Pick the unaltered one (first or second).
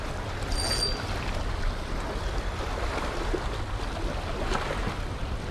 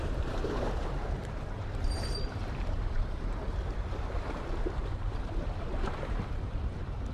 first